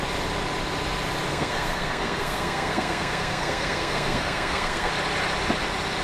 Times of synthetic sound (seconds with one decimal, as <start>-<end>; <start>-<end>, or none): 1.3-4.9